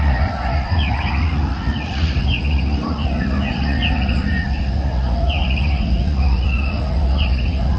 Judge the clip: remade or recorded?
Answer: remade